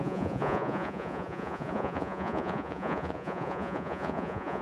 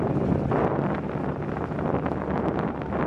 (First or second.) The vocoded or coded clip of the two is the first